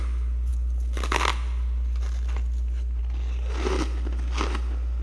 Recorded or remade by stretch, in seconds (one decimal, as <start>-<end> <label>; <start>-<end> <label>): 0.0-5.0 recorded